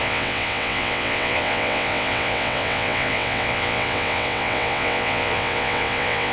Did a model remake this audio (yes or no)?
yes